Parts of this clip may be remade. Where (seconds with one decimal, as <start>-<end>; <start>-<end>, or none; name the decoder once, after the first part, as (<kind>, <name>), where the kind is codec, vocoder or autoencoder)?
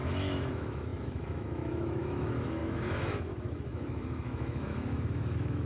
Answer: 0.0-5.7 (autoencoder, DAC-VAE)